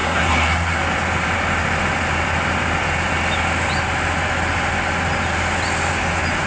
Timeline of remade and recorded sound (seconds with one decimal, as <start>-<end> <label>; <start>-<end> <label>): 0.0-0.8 remade; 0.8-6.5 recorded